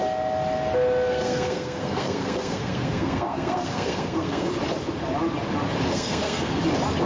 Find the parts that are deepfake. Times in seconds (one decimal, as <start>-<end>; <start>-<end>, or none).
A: 1.1-4.5; 5.9-6.6